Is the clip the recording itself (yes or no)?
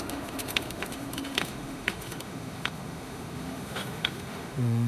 no